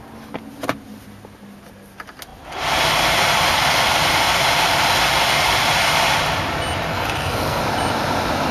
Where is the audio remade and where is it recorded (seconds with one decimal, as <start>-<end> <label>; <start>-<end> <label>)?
0.0-6.9 recorded; 6.9-7.6 remade; 7.6-8.5 recorded

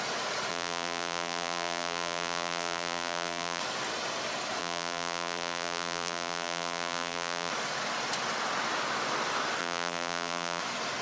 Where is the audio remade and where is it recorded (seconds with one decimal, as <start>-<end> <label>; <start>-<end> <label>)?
0.0-0.5 recorded; 0.5-3.6 remade; 3.6-4.6 recorded; 4.6-7.5 remade; 7.5-9.6 recorded; 9.6-10.6 remade; 10.6-11.0 recorded

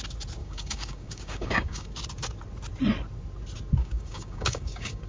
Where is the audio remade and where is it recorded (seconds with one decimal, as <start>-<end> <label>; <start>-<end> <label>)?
0.0-0.4 recorded; 0.4-1.9 remade; 1.9-3.8 recorded; 3.8-5.1 remade

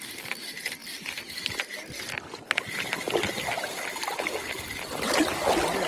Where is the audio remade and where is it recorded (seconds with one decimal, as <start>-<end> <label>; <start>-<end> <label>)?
0.0-5.9 recorded

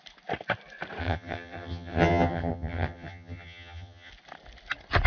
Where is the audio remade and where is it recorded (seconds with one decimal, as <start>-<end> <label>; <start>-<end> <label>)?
0.0-1.0 recorded; 1.0-4.1 remade; 4.1-5.1 recorded